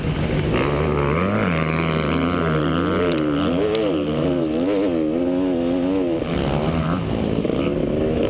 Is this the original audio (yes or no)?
yes